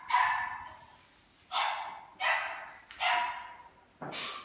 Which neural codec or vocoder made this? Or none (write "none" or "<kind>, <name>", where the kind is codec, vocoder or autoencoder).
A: none